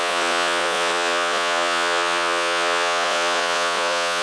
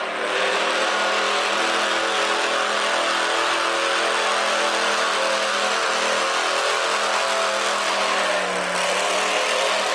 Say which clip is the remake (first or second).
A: first